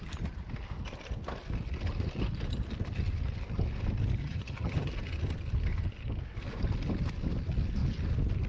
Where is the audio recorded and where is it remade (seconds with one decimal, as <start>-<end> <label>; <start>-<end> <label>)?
0.0-4.2 recorded; 4.2-4.9 remade; 4.9-8.5 recorded